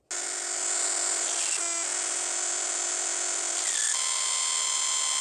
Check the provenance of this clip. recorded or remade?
recorded